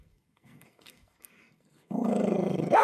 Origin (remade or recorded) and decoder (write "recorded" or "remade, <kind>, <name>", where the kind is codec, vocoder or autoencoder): remade, codec, SNAC